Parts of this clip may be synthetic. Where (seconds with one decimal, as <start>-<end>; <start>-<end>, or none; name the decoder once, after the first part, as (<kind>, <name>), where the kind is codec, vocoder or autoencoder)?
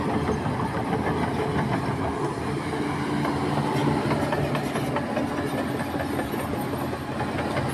3.8-4.3 (vocoder, BigVGAN v2)